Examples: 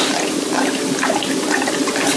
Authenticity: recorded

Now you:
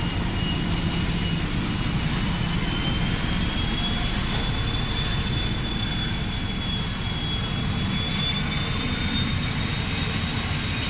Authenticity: recorded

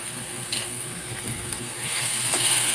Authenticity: remade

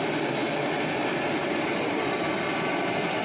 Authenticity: recorded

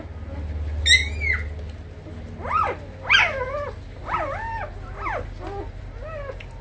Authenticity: recorded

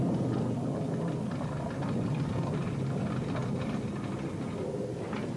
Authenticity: recorded